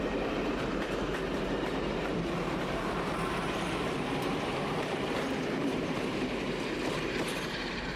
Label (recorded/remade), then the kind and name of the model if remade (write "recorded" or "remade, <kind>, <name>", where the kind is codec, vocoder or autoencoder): remade, vocoder, BigVGAN v2